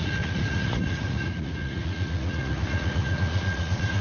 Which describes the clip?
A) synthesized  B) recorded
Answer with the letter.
A